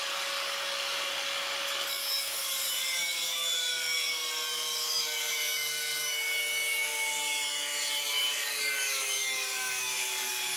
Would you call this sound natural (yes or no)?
no